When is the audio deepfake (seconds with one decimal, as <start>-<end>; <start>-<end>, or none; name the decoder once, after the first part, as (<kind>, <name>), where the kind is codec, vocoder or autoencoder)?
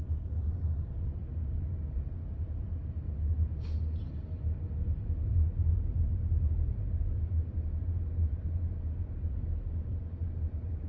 0.0-1.2 (vocoder, BigVGAN v2); 1.9-2.8; 5.3-10.9